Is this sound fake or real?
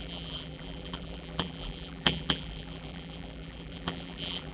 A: fake